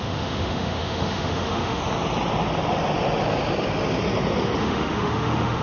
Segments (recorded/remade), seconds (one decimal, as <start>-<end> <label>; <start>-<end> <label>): 0.0-1.8 remade; 1.8-4.6 recorded; 4.6-5.6 remade